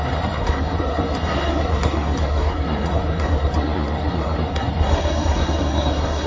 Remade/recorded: remade